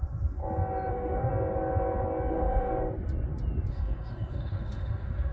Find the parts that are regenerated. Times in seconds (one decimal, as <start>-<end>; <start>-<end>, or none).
0.0-0.4; 0.9-1.3; 2.3-2.7; 3.7-5.3